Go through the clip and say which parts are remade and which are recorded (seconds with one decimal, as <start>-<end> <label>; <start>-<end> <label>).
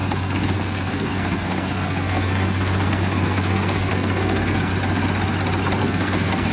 0.0-4.7 remade; 4.7-5.8 recorded; 5.8-6.5 remade